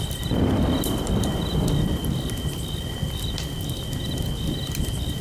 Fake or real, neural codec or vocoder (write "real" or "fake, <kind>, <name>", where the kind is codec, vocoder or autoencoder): real